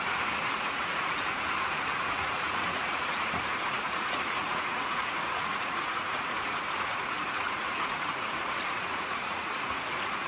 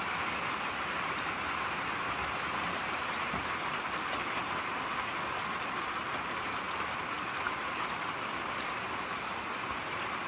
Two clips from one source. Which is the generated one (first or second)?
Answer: first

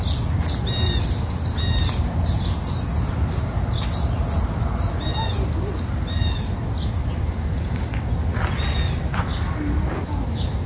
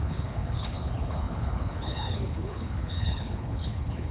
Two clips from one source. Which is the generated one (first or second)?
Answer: second